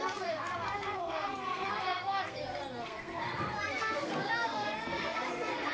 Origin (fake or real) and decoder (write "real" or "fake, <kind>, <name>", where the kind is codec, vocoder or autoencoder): fake, codec, SNAC